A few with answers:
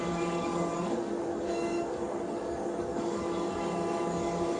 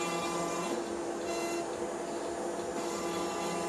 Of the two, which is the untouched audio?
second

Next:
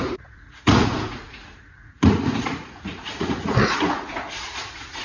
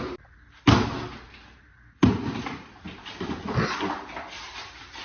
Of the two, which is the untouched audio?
second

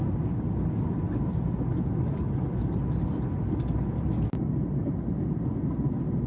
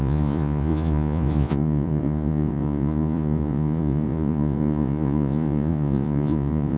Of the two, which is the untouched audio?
first